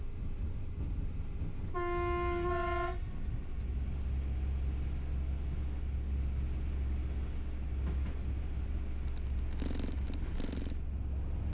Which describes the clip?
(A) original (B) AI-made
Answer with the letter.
A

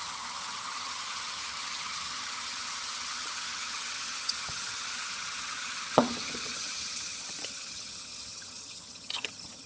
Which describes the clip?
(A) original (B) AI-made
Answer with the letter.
B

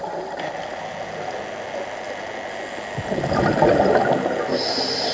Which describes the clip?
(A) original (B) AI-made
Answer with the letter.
A